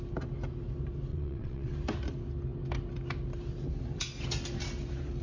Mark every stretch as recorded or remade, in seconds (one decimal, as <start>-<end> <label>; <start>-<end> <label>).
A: 0.0-1.1 recorded; 1.1-1.7 remade; 1.7-5.2 recorded